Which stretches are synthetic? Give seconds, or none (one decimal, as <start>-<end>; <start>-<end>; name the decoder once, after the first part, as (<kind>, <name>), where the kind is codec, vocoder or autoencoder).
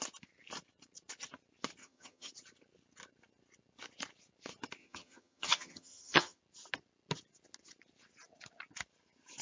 1.8-2.3 (vocoder, HiFi-GAN); 4.8-6.4